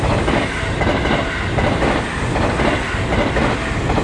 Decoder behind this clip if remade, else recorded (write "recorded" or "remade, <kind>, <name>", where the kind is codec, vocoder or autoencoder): recorded